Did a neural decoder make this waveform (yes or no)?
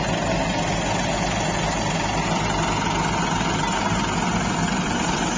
no